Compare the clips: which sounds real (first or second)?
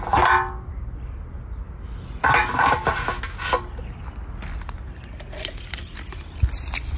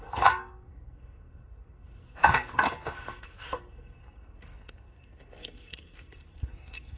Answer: first